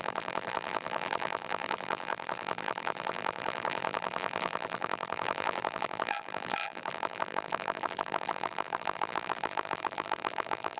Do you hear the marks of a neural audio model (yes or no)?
yes